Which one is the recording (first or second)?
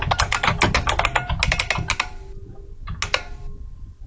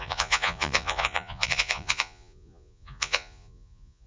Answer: first